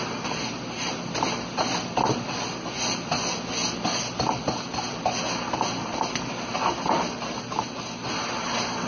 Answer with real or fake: real